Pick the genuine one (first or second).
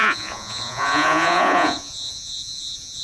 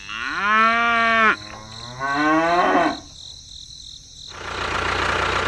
second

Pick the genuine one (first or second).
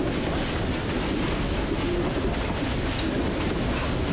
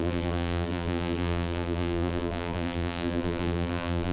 first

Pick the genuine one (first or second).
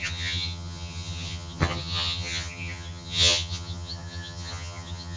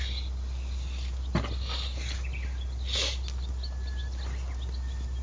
second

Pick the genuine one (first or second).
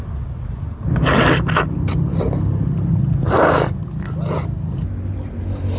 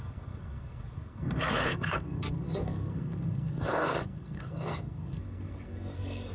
first